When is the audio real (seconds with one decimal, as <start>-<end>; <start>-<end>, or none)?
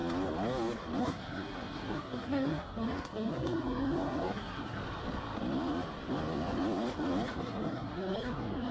0.0-1.0; 4.8-7.4